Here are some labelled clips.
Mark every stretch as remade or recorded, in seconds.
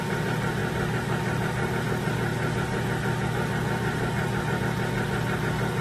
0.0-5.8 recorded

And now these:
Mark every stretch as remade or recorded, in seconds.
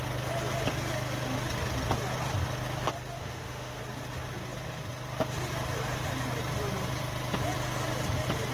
0.0-3.2 recorded; 3.2-3.8 remade; 3.8-8.5 recorded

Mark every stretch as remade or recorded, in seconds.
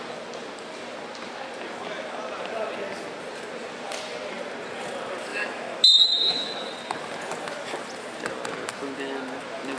0.0-5.3 recorded; 5.3-6.7 remade; 6.7-9.8 recorded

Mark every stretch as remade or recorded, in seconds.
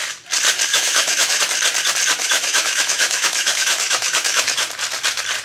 0.0-0.7 recorded; 0.7-1.4 remade; 1.4-2.2 recorded; 2.2-4.7 remade; 4.7-5.4 recorded